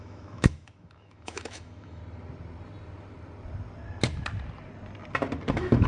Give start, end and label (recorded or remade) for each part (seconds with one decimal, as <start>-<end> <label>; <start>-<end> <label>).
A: 0.0-2.0 remade; 2.0-5.5 recorded; 5.5-5.9 remade